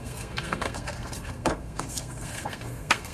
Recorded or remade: remade